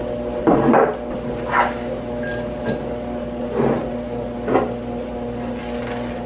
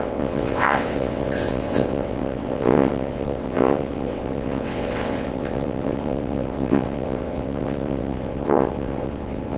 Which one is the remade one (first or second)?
second